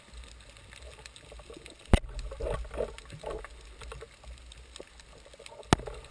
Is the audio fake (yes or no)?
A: no